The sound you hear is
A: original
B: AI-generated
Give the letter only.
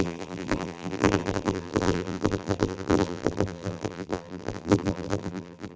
B